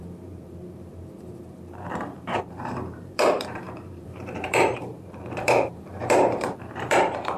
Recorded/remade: remade